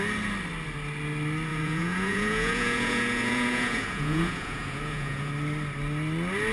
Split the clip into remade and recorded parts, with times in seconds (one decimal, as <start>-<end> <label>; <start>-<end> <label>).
0.0-1.5 recorded; 1.5-5.3 remade; 5.3-6.5 recorded

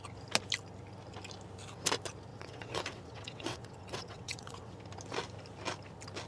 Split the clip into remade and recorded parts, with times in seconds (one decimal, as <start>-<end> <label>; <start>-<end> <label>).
0.0-2.3 recorded; 2.3-4.8 remade; 4.8-6.3 recorded

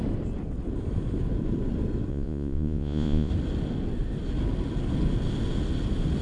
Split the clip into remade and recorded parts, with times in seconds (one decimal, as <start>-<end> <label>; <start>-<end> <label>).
0.0-2.1 recorded; 2.1-3.3 remade; 3.3-6.2 recorded

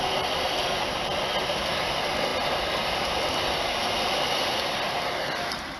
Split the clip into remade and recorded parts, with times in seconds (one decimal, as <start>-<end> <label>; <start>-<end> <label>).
0.0-5.8 recorded

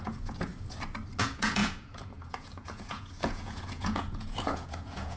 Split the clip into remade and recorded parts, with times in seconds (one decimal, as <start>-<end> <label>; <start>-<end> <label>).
0.0-0.5 remade; 0.5-1.2 recorded; 1.2-5.2 remade

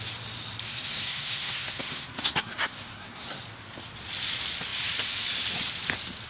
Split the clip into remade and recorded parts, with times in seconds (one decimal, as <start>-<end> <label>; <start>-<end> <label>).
0.0-0.7 recorded; 0.7-3.4 remade; 3.4-6.3 recorded